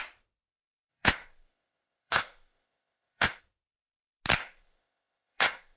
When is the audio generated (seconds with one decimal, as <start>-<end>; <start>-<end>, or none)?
0.9-3.4; 4.4-5.8